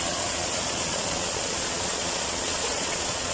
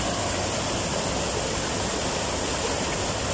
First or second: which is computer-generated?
first